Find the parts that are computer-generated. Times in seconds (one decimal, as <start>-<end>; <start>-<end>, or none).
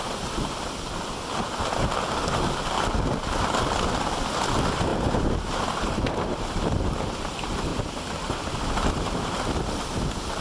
4.9-6.9; 7.7-8.4